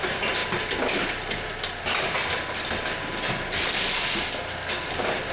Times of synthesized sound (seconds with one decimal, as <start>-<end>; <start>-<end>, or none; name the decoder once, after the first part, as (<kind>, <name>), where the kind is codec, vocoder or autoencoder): none